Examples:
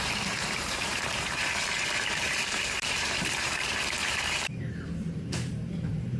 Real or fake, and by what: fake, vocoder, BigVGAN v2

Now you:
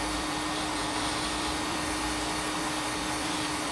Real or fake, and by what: fake, vocoder, BigVGAN v2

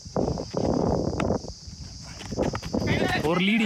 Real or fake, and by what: fake, vocoder, BigVGAN v2